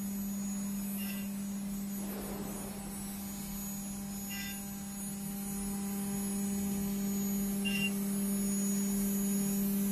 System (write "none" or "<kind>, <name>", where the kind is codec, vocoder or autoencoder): none